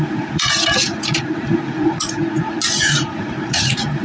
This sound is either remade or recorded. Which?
remade